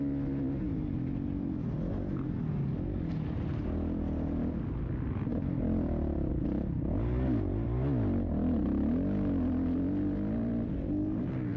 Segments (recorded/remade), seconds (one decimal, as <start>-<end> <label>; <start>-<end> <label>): 0.0-5.3 recorded; 5.3-6.3 remade; 6.3-11.6 recorded